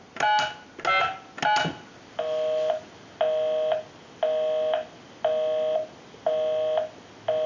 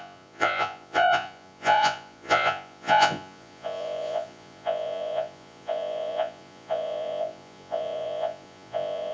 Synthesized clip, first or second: second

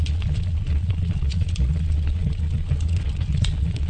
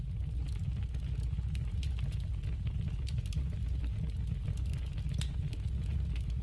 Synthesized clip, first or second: first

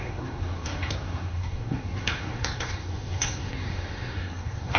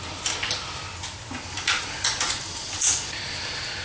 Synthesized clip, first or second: first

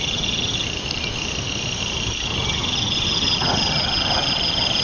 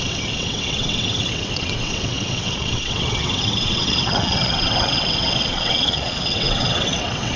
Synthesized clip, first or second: second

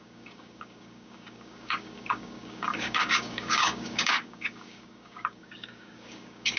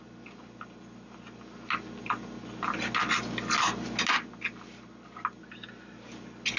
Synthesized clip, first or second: first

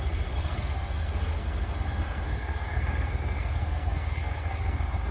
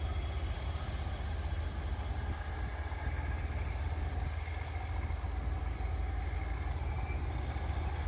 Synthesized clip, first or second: first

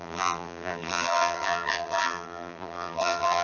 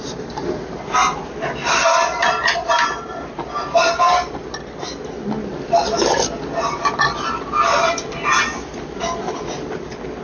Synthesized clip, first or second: first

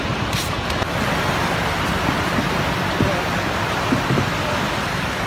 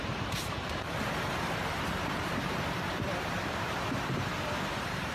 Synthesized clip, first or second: second